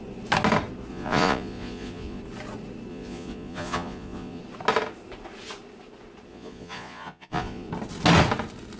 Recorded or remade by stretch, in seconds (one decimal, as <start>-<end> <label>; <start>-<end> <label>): 0.0-0.9 recorded; 0.9-2.2 remade; 2.2-2.9 recorded; 2.9-4.4 remade; 4.4-6.3 recorded; 6.3-7.7 remade; 7.7-8.8 recorded